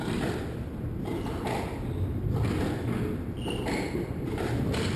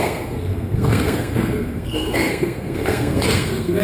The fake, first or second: second